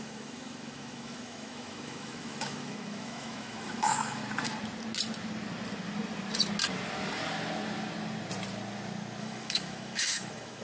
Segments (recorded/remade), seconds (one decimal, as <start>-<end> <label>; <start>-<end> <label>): 0.0-4.2 remade; 4.2-9.2 recorded; 9.2-10.6 remade